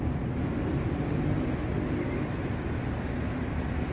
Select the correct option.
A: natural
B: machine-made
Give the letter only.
A